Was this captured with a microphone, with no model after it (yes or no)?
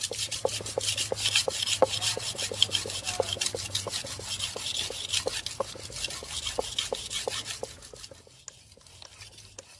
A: yes